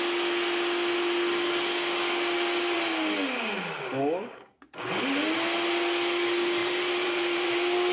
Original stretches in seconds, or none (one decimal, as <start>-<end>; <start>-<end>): 0.0-6.6; 7.5-7.9